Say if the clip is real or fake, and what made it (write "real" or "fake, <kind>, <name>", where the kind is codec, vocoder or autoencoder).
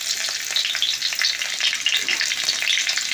real